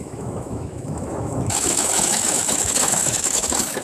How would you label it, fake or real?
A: fake